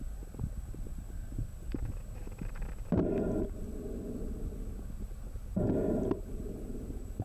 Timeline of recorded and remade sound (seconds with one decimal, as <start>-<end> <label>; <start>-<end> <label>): 0.0-1.5 remade; 1.5-4.0 recorded; 4.0-5.5 remade; 5.5-6.2 recorded; 6.2-7.2 remade

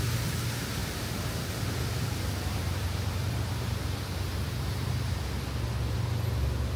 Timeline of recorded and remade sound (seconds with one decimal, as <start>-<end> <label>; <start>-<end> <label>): 0.0-0.8 recorded; 0.8-4.9 remade; 4.9-6.8 recorded

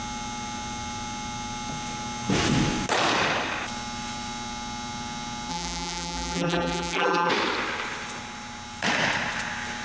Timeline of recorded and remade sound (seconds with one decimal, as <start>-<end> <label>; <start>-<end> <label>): 0.0-5.5 recorded; 5.5-7.3 remade; 7.3-9.8 recorded

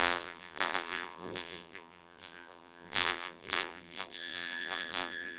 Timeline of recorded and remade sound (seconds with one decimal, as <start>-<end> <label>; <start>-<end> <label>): 0.0-5.4 remade

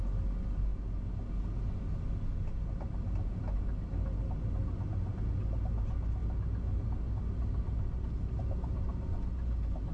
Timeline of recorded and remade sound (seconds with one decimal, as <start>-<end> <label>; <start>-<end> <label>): 0.0-9.9 recorded